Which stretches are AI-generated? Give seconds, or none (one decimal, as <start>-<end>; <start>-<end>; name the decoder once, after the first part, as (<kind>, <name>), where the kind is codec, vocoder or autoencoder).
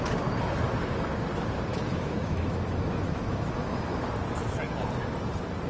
1.7-4.1 (autoencoder, DAC-VAE)